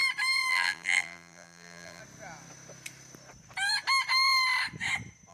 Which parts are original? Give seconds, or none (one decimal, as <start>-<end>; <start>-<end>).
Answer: 0.0-0.5; 2.0-5.3